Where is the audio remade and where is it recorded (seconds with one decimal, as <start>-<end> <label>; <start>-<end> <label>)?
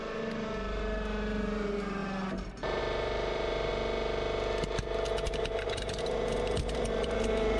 0.0-3.7 remade; 3.7-5.3 recorded; 5.3-7.6 remade